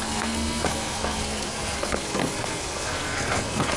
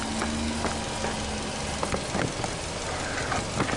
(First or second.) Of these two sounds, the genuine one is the second